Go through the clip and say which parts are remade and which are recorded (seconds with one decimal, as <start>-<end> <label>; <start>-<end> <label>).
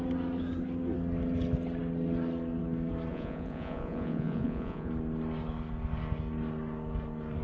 0.0-3.1 recorded; 3.1-4.9 remade; 4.9-7.4 recorded